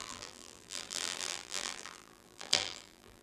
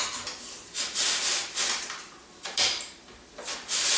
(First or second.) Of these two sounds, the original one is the second